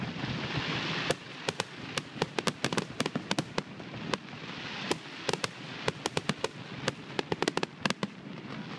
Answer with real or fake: real